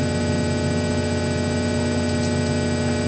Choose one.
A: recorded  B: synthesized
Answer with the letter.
A